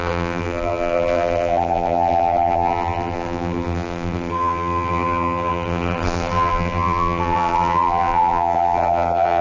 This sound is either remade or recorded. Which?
remade